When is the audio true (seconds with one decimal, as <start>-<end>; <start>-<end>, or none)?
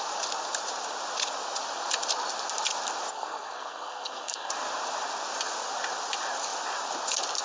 0.0-3.1; 4.5-7.4